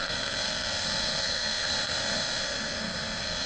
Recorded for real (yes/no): no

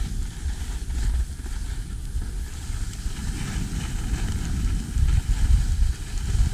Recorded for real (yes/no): yes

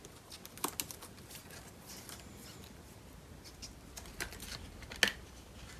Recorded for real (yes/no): yes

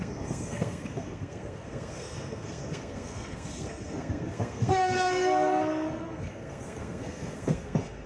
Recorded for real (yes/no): no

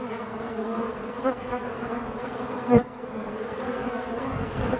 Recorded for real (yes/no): no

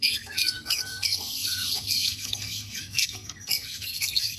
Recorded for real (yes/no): no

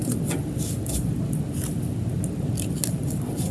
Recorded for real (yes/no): yes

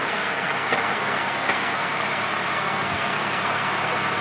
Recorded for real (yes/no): no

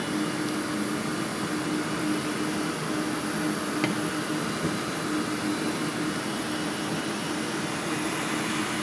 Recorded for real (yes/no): yes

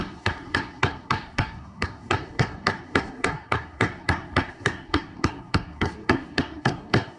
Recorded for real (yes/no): no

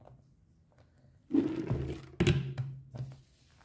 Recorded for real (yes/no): yes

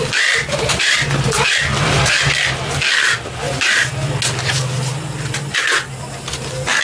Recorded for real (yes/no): yes